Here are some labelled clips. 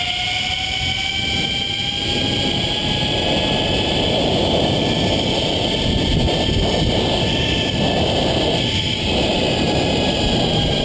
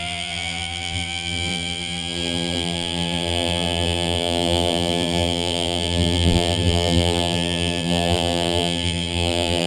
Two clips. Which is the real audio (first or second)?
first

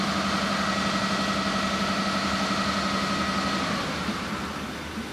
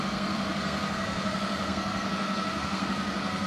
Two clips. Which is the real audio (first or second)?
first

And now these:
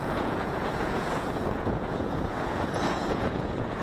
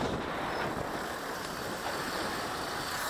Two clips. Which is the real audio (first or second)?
second